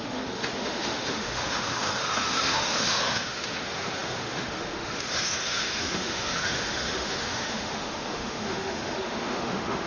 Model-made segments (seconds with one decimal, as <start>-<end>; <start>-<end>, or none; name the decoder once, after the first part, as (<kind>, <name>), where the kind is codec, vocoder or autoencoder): 0.0-9.9 (autoencoder, DAC-VAE)